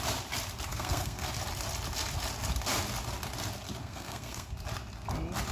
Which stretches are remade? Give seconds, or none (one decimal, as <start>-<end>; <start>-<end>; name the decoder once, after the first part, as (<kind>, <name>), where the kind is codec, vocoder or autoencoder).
0.7-1.3 (codec, SNAC); 3.8-4.5